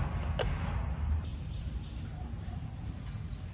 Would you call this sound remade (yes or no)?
no